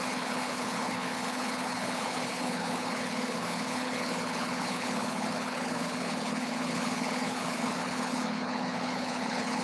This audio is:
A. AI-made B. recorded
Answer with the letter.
A